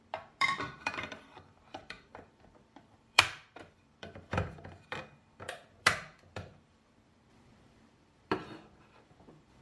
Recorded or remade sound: remade